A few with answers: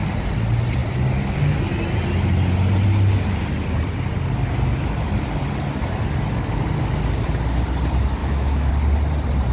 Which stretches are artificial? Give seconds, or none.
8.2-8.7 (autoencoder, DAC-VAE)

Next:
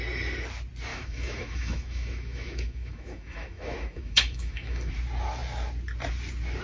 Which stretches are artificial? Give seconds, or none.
0.9-4.9 (autoencoder, DAC-VAE)